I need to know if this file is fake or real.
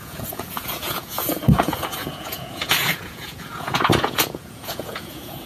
fake